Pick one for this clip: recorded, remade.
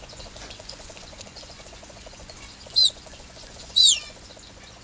remade